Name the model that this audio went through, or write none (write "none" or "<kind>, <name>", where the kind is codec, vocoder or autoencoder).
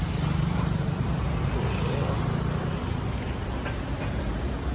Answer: none